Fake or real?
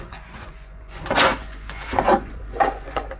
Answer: fake